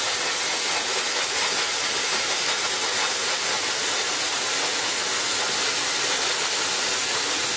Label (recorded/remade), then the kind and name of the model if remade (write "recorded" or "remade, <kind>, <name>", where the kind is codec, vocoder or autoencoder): recorded